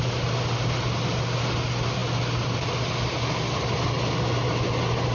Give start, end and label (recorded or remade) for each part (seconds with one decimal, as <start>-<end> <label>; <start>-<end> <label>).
0.0-5.1 recorded